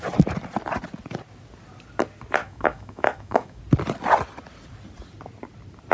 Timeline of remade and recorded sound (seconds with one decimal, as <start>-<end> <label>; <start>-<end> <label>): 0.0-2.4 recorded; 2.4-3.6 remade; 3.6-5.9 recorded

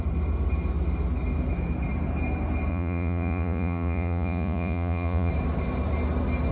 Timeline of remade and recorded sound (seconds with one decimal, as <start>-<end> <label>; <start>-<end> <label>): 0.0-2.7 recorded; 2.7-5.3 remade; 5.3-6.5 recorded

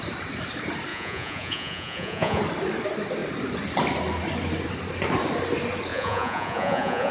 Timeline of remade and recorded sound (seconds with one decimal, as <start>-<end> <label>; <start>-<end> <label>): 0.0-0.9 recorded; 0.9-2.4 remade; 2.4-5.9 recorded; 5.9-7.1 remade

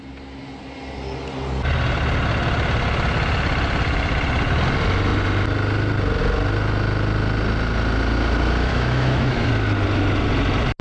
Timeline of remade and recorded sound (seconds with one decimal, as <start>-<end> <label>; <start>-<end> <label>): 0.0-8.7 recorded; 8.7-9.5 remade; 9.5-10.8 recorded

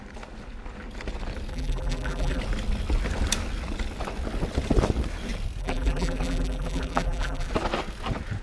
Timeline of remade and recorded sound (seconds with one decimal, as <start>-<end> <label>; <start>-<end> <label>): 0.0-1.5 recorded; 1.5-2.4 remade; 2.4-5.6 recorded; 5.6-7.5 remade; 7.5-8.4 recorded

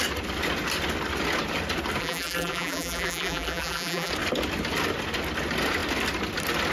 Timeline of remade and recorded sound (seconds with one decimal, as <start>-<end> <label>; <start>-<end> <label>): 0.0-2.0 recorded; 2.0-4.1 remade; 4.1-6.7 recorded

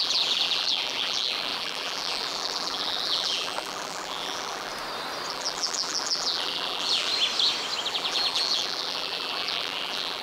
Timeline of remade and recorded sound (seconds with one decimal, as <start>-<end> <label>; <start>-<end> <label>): 0.0-4.7 remade; 4.7-5.3 recorded; 5.3-7.1 remade; 7.1-7.9 recorded; 7.9-10.2 remade

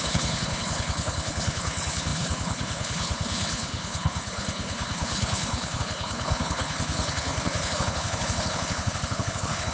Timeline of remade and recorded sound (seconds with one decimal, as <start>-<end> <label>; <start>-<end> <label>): 0.0-9.7 remade